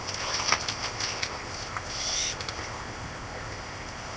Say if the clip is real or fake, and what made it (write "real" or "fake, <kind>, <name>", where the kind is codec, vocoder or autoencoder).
fake, codec, ZipCodec